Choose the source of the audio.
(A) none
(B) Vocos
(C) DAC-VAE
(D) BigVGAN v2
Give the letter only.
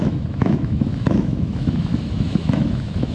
C